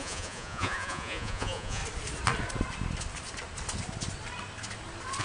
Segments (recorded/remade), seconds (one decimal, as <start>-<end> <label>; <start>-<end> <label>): 0.0-1.8 remade; 1.8-5.2 recorded